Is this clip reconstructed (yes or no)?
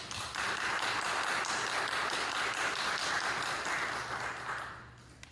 no